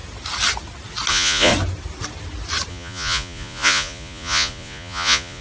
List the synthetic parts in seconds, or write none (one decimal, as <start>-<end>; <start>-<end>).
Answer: 1.1-1.5; 2.7-5.4